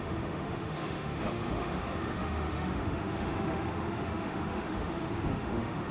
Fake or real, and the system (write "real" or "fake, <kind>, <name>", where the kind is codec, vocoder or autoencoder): fake, autoencoder, DAC-VAE